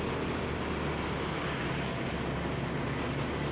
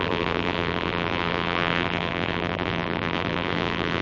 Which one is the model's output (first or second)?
second